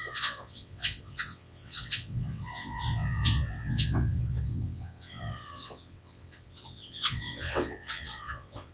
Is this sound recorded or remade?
remade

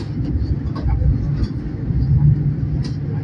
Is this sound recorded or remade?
recorded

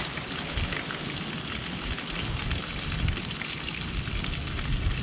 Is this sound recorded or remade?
recorded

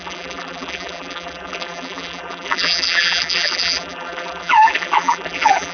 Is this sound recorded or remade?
remade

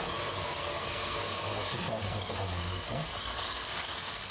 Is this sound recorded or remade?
remade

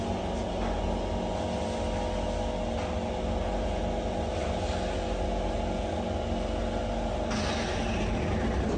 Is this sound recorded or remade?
recorded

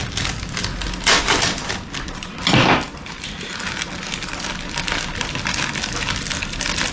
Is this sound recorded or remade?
recorded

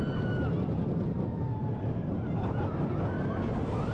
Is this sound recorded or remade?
recorded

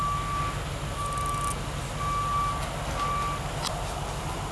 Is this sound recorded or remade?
recorded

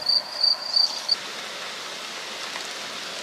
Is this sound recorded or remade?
recorded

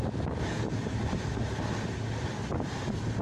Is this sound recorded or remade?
recorded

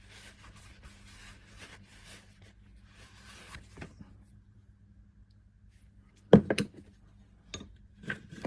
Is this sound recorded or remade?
recorded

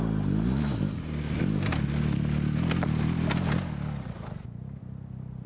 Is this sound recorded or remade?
recorded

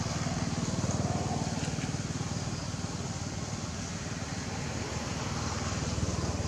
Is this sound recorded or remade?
recorded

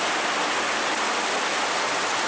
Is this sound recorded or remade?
recorded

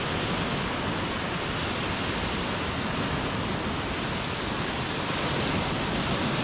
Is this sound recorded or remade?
recorded